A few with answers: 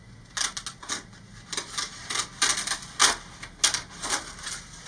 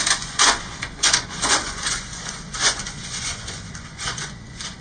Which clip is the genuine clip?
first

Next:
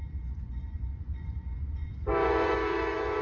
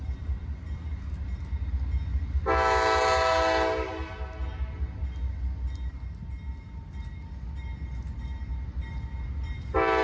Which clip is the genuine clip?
second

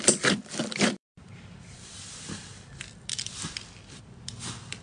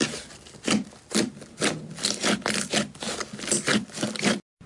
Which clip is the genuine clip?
second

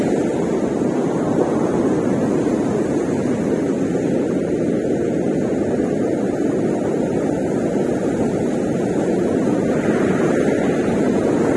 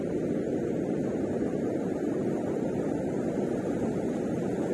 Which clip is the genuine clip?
first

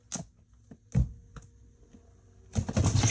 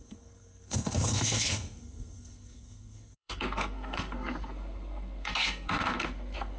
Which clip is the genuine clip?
first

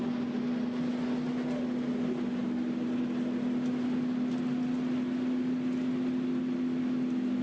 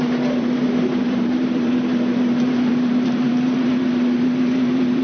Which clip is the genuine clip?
first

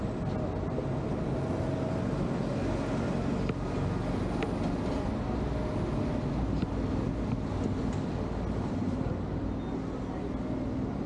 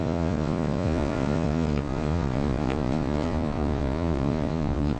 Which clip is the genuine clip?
first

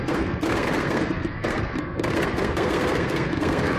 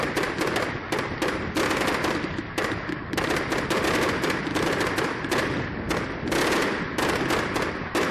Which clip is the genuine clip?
second